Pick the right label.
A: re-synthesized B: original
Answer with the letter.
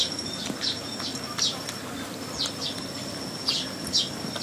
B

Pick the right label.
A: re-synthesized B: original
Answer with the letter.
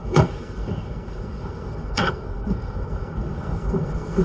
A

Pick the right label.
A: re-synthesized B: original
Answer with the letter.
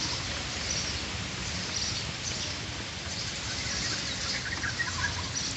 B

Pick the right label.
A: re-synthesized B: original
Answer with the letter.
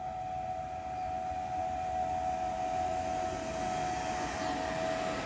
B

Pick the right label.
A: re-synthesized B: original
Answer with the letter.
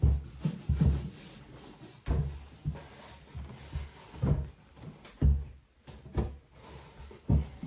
B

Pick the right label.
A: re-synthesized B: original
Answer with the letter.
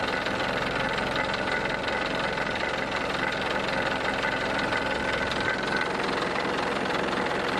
B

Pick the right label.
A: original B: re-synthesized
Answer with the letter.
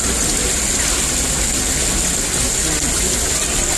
A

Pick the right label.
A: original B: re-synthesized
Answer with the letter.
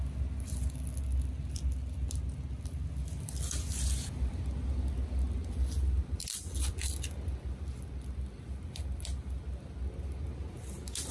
A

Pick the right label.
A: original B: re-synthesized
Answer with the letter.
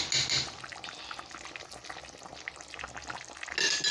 A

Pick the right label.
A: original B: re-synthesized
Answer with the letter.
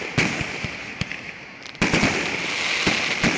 A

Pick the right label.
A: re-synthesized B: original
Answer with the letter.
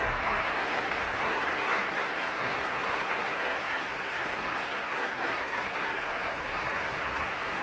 A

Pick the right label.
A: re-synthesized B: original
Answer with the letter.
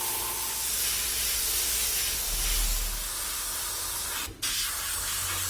B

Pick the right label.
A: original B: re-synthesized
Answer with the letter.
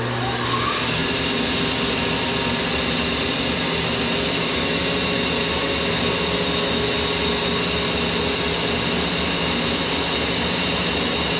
A